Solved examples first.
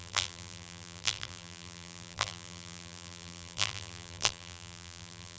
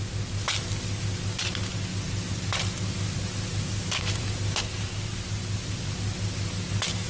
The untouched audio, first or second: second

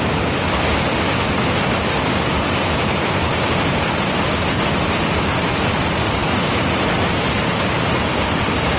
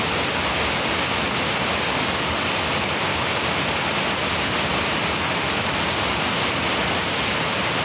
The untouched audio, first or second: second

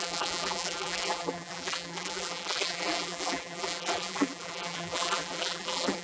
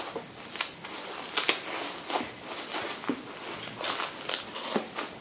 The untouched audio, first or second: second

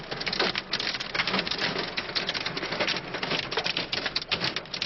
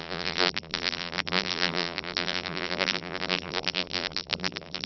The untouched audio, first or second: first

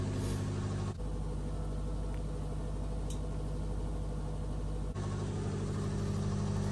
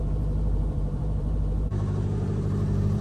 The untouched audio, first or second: first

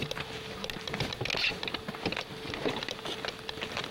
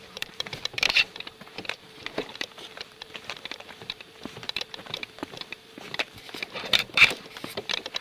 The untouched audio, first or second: first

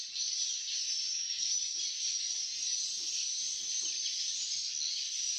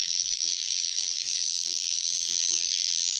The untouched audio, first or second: first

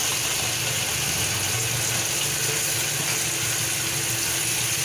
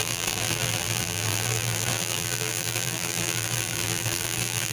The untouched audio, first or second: first